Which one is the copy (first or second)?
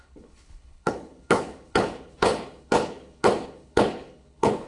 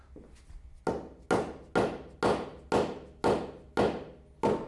first